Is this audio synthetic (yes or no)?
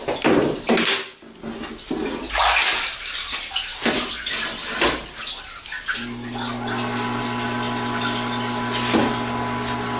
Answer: no